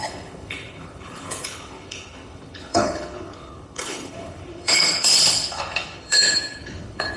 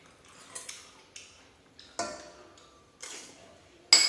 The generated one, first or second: first